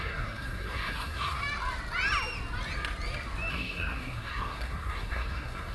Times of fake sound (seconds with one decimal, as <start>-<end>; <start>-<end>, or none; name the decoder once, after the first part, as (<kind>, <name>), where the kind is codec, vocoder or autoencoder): 0.0-1.4 (codec, SNAC); 3.5-5.7